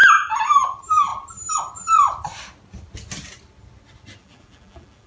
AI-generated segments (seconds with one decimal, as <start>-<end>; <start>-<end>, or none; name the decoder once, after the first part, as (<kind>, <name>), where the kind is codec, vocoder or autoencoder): 0.0-1.1 (vocoder, BigVGAN v2); 4.2-5.1